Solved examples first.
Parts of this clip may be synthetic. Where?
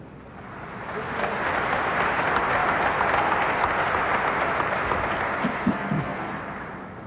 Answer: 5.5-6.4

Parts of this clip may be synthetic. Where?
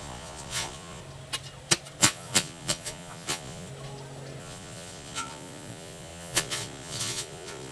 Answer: 0.0-1.0; 2.0-3.7; 4.4-7.7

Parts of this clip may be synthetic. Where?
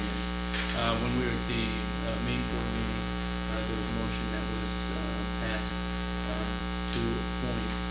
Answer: 2.5-3.9; 5.7-6.6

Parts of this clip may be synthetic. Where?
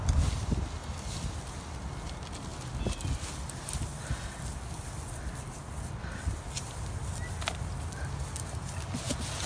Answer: none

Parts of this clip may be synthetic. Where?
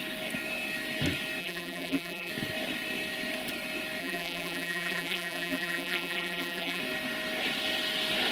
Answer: 1.4-2.3; 4.0-6.8